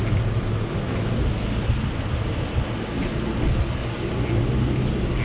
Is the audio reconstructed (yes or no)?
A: no